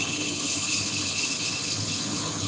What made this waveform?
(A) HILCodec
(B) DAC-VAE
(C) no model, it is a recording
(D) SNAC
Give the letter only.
A